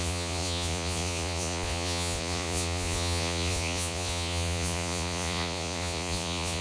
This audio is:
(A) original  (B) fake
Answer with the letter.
B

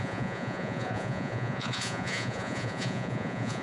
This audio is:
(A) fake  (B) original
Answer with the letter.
A